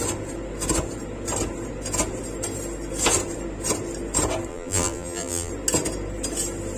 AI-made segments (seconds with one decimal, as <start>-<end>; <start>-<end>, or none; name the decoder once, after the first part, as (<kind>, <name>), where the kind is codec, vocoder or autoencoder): 4.5-5.5 (vocoder, BigVGAN v2)